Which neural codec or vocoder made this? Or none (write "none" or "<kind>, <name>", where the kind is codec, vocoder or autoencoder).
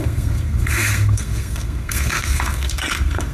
codec, SNAC